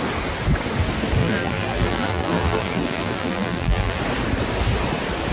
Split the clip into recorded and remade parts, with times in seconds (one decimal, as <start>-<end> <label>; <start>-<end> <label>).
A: 0.0-1.2 recorded; 1.2-4.0 remade; 4.0-5.3 recorded